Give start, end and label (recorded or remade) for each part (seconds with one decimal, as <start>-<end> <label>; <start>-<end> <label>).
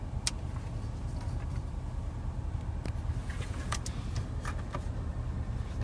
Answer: 0.0-3.2 recorded; 3.2-3.8 remade; 3.8-5.8 recorded